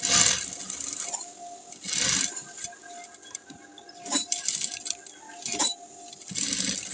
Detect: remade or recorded recorded